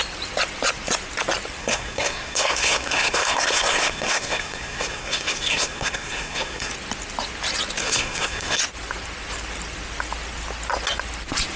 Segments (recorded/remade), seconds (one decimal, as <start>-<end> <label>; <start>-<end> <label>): 0.0-1.6 recorded; 1.6-6.7 remade; 6.7-7.8 recorded; 7.8-8.6 remade; 8.6-11.6 recorded